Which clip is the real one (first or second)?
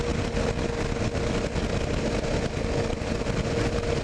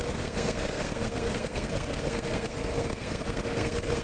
first